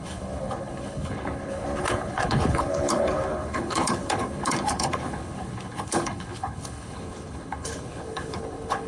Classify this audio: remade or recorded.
remade